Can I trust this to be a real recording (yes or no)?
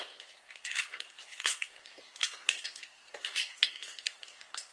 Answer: no